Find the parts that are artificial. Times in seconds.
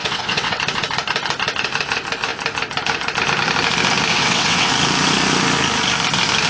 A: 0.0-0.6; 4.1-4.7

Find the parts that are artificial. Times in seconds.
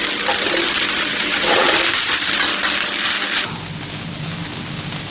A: 1.1-1.7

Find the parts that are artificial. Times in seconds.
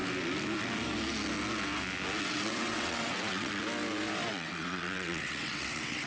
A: 2.2-3.6; 4.3-6.1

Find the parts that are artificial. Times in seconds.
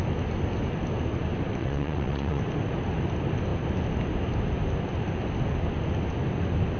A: 1.6-2.4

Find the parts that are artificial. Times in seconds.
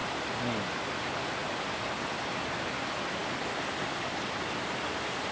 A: none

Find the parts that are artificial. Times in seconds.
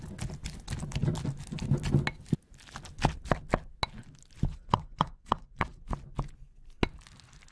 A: 4.5-5.8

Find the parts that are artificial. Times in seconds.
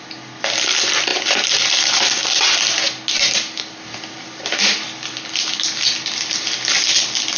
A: none